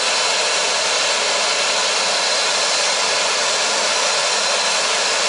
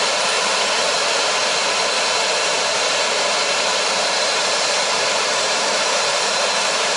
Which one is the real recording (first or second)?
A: first